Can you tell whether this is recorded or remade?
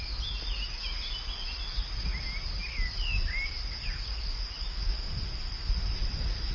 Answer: recorded